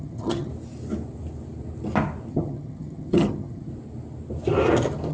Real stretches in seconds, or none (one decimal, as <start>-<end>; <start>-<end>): 0.5-2.3; 3.7-5.1